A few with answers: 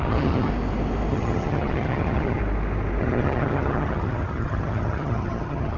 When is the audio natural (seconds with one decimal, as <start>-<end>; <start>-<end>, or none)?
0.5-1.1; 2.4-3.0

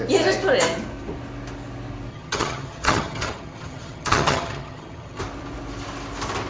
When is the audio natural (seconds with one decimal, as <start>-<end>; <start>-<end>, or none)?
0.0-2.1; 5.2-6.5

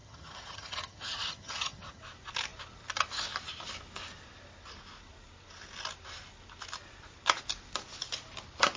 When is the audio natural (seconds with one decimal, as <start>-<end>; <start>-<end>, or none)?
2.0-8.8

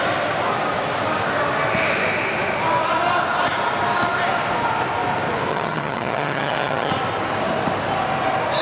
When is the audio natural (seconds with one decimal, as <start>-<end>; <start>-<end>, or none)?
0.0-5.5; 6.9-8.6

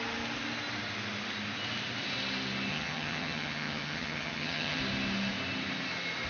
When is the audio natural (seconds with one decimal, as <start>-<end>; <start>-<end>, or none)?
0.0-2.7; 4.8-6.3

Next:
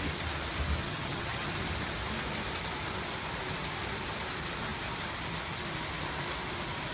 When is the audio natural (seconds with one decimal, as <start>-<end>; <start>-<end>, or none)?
0.0-0.8; 1.5-6.9

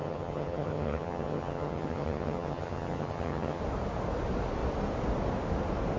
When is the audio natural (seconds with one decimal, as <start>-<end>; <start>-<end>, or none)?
3.6-6.0

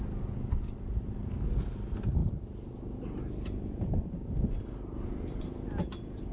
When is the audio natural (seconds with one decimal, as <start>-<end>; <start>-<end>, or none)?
0.0-6.3